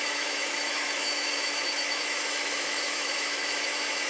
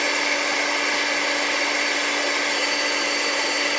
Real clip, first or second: second